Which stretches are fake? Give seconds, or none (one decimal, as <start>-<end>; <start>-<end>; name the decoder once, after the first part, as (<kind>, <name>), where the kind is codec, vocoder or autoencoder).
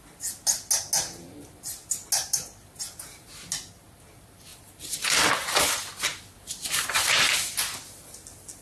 4.5-5.3 (vocoder, BigVGAN v2)